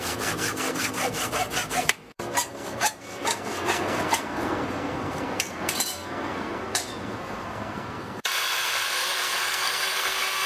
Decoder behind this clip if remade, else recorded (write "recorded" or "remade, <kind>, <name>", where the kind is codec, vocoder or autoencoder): remade, codec, SNAC